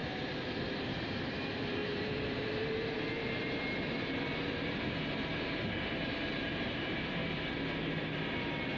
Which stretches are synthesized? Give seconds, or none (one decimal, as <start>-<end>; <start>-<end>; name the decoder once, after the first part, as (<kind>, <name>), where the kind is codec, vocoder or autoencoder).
0.0-7.2 (vocoder, BigVGAN v2); 7.9-8.8